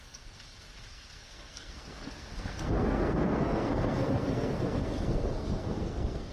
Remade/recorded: remade